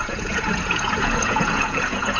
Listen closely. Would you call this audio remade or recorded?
remade